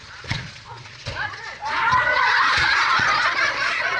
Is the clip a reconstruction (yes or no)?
yes